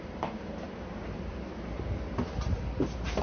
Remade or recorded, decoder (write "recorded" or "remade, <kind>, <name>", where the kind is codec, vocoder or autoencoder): remade, vocoder, BigVGAN v2